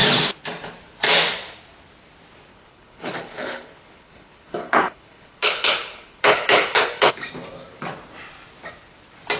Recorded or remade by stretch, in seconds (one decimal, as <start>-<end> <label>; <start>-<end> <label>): 0.0-2.5 recorded; 2.5-7.1 remade; 7.1-9.4 recorded